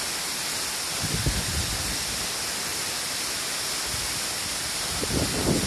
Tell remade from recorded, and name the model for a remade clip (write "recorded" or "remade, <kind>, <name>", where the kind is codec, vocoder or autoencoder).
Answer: recorded